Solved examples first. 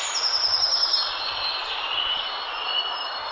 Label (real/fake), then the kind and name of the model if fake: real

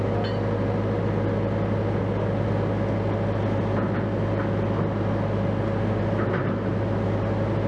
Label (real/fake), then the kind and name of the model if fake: real